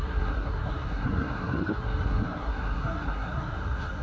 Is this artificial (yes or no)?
yes